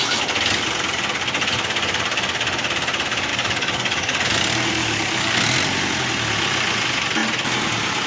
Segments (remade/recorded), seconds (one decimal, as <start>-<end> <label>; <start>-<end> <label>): 0.0-3.3 recorded; 3.3-4.3 remade; 4.3-4.8 recorded; 4.8-5.4 remade; 5.4-8.1 recorded